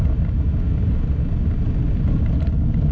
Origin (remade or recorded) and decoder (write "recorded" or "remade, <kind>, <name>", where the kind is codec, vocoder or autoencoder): recorded